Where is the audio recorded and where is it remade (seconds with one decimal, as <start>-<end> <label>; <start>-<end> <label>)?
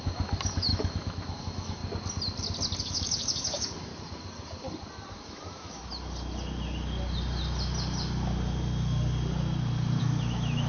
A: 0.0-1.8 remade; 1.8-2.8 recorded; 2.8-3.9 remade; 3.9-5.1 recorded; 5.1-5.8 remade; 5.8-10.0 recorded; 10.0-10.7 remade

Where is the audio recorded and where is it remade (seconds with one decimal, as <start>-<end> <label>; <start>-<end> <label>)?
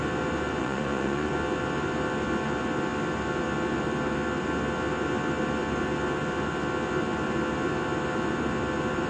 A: 0.0-0.6 recorded; 0.6-1.3 remade; 1.3-9.1 recorded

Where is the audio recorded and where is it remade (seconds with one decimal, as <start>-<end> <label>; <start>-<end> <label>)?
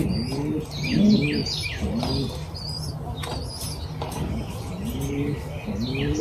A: 0.0-6.2 recorded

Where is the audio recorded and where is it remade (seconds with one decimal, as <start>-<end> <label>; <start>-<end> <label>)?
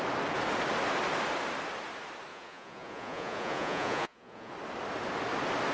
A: 0.0-2.3 recorded; 2.3-4.5 remade; 4.5-5.7 recorded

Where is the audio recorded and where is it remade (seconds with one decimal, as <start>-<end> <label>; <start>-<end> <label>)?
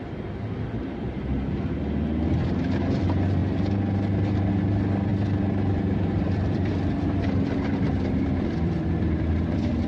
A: 0.0-5.1 recorded; 5.1-9.9 remade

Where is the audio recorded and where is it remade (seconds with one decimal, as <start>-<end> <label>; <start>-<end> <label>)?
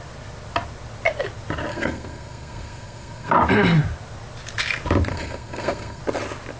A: 0.0-1.7 recorded; 1.7-3.3 remade; 3.3-5.1 recorded; 5.1-6.0 remade; 6.0-6.6 recorded